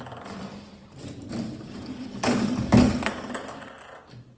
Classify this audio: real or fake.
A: real